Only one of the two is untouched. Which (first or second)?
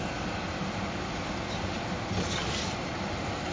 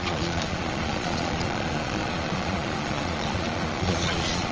first